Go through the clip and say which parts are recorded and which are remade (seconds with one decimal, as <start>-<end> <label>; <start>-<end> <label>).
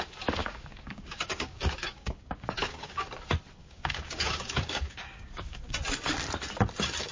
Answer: 0.0-0.4 recorded; 0.4-3.0 remade; 3.0-3.6 recorded; 3.6-5.7 remade; 5.7-7.1 recorded